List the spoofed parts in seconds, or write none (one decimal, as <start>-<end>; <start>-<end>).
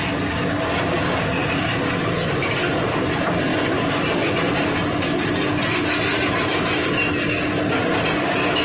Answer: none